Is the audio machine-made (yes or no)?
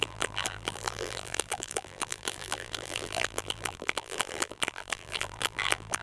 yes